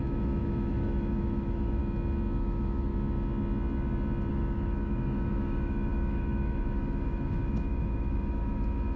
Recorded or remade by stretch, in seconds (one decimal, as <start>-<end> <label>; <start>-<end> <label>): 0.0-1.8 remade; 1.8-2.4 recorded; 2.4-2.9 remade; 2.9-4.3 recorded; 4.3-9.0 remade